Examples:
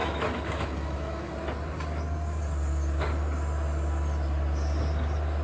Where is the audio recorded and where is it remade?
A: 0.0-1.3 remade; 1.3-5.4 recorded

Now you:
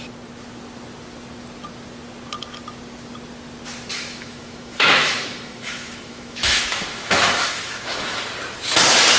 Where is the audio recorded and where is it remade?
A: 0.0-3.9 recorded; 3.9-8.2 remade; 8.2-9.2 recorded

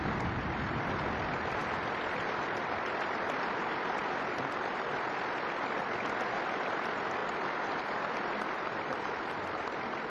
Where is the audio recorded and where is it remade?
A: 0.0-10.1 recorded

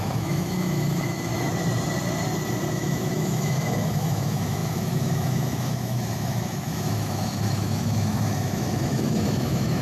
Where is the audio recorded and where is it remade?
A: 0.0-1.3 remade; 1.3-2.7 recorded; 2.7-9.8 remade

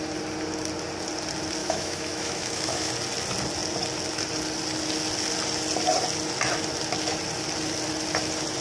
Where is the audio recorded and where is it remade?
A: 0.0-1.6 recorded; 1.6-2.9 remade; 2.9-8.6 recorded

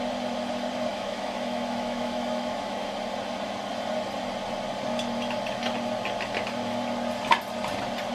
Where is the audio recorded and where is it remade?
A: 0.0-0.9 recorded; 0.9-2.9 remade; 2.9-8.1 recorded

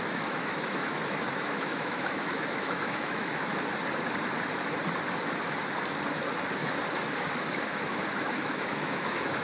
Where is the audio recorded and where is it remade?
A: 0.0-3.5 remade; 3.5-7.0 recorded; 7.0-9.4 remade